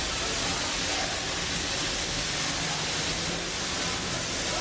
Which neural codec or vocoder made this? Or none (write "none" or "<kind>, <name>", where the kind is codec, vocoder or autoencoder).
none